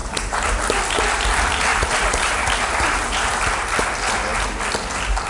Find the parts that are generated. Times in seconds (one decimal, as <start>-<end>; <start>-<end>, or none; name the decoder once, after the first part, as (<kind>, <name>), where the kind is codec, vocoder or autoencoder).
0.0-0.6 (vocoder, BigVGAN v2); 1.7-3.4